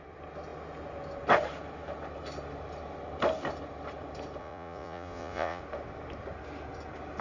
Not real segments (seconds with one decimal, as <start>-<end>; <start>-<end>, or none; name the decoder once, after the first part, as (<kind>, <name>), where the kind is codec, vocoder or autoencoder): 4.4-5.6 (vocoder, Vocos)

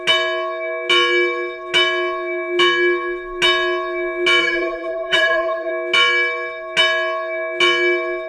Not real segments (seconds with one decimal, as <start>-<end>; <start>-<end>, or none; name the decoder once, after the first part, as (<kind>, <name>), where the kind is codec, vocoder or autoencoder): 4.4-5.7 (vocoder, BigVGAN v2)

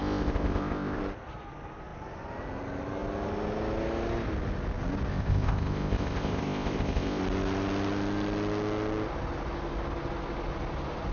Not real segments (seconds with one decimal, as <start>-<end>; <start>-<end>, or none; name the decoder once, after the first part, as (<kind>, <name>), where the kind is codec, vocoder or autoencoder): 0.0-1.0 (codec, ZipCodec); 5.1-7.2